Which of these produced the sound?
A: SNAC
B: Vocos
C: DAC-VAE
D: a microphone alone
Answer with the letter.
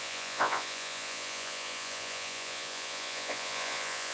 B